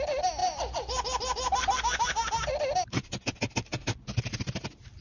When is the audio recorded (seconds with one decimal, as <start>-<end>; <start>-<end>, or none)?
0.0-5.0